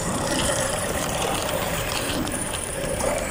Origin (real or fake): fake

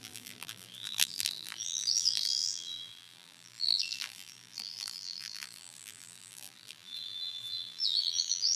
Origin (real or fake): fake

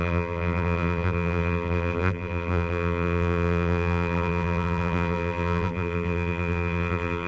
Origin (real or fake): fake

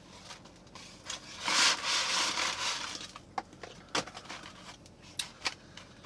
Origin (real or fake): real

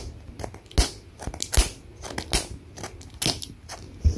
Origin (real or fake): real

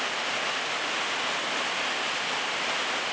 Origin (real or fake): real